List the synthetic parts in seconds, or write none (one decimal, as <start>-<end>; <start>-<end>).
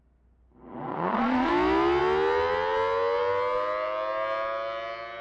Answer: 0.9-1.5